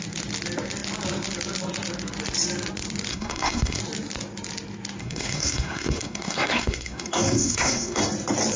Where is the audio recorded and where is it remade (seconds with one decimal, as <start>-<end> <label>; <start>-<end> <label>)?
0.0-3.1 recorded; 3.1-3.8 remade; 3.8-5.0 recorded; 5.0-8.0 remade; 8.0-8.6 recorded